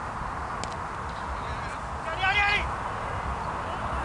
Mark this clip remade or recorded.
recorded